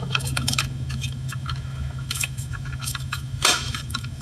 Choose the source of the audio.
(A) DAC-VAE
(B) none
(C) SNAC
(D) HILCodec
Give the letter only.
A